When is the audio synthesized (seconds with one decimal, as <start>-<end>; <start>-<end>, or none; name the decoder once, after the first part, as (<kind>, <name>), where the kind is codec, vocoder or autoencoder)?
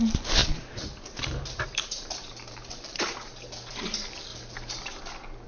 0.4-3.7 (vocoder, BigVGAN v2); 4.3-5.0